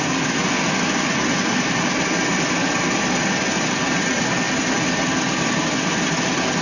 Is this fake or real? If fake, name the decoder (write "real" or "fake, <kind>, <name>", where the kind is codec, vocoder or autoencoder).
real